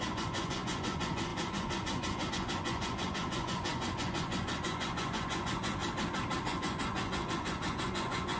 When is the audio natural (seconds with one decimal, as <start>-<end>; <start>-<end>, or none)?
5.8-6.4